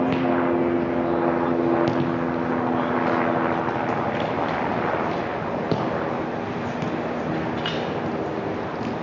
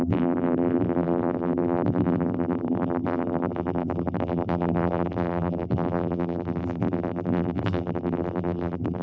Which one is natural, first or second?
first